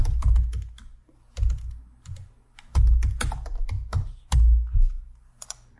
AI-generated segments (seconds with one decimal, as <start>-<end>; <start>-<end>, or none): none